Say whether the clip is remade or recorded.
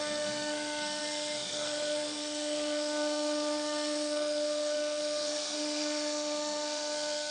remade